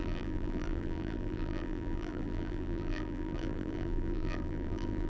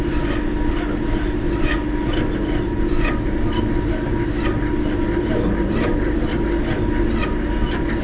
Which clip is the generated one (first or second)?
first